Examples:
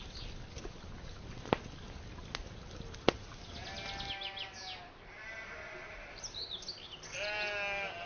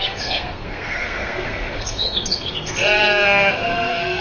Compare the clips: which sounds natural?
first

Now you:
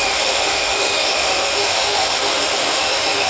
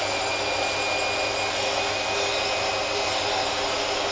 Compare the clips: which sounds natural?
second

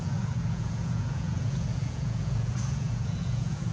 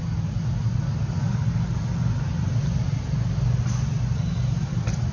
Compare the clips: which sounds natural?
second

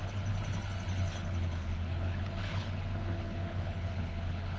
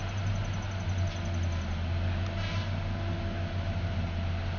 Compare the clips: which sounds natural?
second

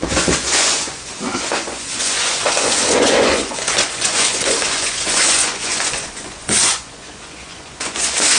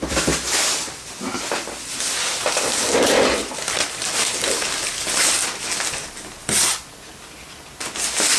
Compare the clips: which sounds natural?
second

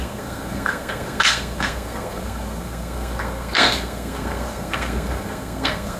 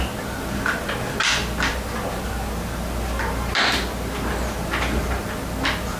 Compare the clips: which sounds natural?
second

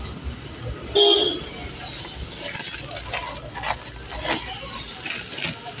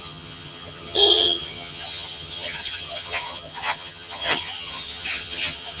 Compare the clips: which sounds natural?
first